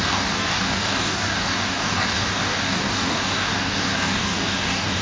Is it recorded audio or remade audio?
remade